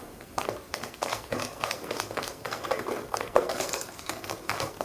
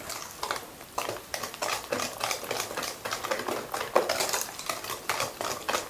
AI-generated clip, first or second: first